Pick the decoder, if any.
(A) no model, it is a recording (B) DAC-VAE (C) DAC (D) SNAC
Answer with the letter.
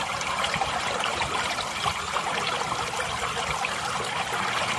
A